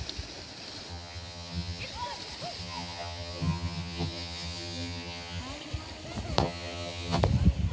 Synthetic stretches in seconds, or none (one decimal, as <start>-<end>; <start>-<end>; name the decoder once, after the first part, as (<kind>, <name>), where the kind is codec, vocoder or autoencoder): 0.9-1.8 (vocoder, HiFi-GAN); 2.6-5.4; 6.4-7.2